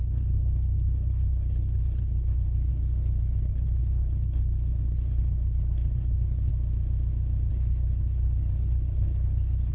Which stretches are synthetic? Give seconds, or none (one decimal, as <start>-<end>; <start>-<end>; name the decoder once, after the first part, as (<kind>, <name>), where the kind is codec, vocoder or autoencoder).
0.0-6.5 (codec, HILCodec); 7.5-9.7